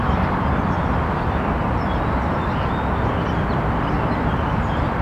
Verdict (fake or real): real